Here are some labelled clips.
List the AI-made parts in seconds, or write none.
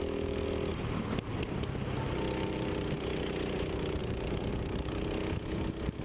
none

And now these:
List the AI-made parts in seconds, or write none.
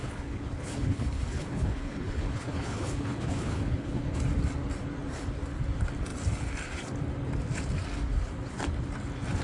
0.0-4.2 (codec, HILCodec)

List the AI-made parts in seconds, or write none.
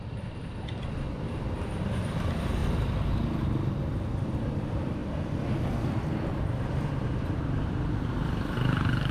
0.0-2.6 (vocoder, BigVGAN v2); 4.1-5.0; 6.4-9.1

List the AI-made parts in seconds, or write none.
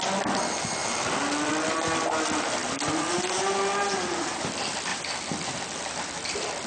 0.8-1.5 (vocoder, BigVGAN v2); 2.6-3.1; 4.9-6.7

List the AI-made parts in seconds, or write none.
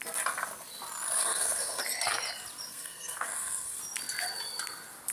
1.2-1.8 (codec, SNAC); 2.7-3.8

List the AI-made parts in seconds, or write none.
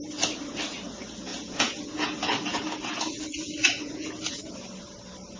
1.3-4.5 (vocoder, Vocos)